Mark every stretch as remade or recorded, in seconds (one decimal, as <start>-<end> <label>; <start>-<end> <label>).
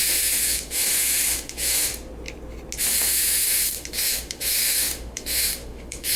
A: 0.0-1.9 remade; 1.9-2.8 recorded; 2.8-6.2 remade